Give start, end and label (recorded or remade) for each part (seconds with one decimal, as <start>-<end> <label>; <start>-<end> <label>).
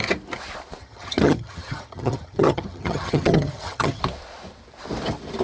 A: 0.0-0.8 recorded; 0.8-4.0 remade; 4.0-5.4 recorded